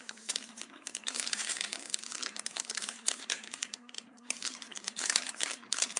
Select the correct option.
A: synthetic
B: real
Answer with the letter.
A